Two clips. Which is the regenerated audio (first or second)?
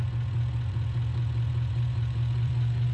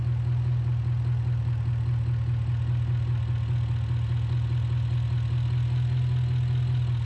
first